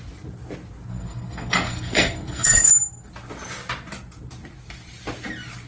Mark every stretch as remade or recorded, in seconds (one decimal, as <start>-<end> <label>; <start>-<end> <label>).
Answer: 0.0-0.9 recorded; 0.9-2.7 remade; 2.7-5.7 recorded